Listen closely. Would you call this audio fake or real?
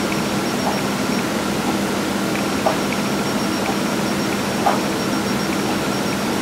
real